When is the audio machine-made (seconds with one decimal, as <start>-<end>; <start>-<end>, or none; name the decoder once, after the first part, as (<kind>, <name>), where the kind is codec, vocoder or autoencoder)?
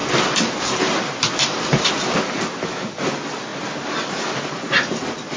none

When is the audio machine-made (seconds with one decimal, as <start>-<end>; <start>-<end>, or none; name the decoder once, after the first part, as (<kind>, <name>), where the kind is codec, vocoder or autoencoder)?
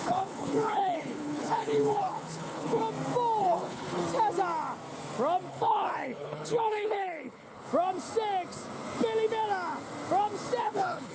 0.0-2.8 (codec, HILCodec); 3.4-4.0; 5.5-7.7; 10.6-11.1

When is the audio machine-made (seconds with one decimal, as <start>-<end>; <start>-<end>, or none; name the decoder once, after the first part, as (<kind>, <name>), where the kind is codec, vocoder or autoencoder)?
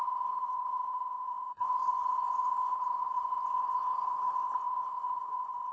0.0-5.7 (codec, HILCodec)